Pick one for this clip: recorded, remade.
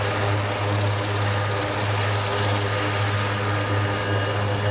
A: recorded